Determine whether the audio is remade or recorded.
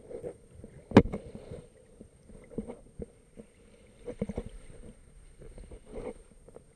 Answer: recorded